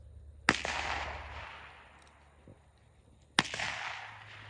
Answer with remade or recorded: recorded